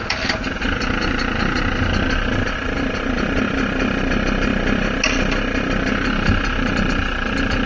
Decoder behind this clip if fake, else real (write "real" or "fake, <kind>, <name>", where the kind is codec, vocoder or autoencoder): real